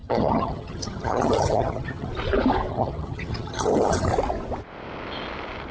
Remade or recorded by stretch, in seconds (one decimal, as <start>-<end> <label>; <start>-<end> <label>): 0.0-2.1 remade; 2.1-2.7 recorded; 2.7-4.1 remade; 4.1-5.7 recorded